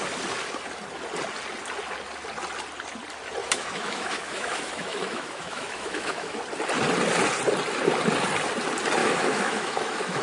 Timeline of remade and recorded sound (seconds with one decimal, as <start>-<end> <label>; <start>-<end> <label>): 0.0-3.4 recorded; 3.4-6.4 remade; 6.4-9.0 recorded; 9.0-10.2 remade